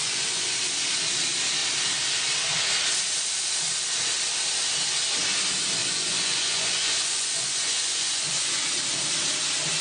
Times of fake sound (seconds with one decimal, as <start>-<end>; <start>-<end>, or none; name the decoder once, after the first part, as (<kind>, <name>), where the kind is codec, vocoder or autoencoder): 0.0-0.5 (vocoder, Vocos); 5.8-8.5